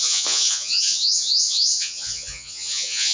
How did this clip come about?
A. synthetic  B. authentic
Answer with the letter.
A